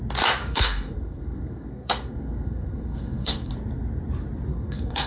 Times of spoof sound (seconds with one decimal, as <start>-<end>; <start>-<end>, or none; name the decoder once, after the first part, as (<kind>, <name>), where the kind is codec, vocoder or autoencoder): 0.4-3.5 (codec, SNAC); 4.5-5.1